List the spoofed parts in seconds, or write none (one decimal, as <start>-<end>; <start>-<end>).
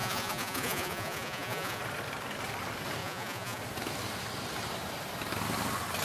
0.0-1.8; 3.0-3.6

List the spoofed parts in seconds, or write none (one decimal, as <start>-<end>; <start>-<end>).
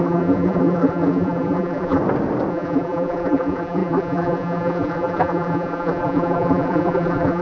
0.0-2.0; 2.5-7.4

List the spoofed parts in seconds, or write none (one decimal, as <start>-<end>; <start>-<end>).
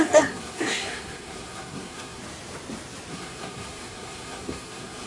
0.0-2.2; 3.1-5.1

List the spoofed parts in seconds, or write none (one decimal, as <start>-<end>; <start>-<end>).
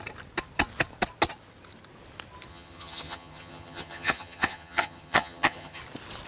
2.5-5.8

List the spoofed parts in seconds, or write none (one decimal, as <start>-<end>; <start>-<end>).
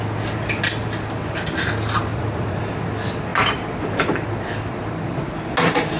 2.1-2.6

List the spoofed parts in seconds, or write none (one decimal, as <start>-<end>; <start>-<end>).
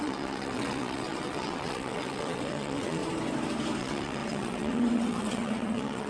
0.0-3.0; 3.8-6.1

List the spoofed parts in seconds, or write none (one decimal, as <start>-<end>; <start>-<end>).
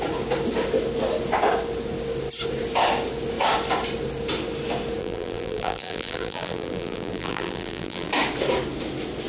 5.0-8.1